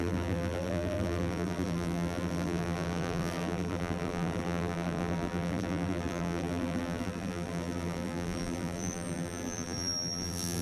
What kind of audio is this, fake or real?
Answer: fake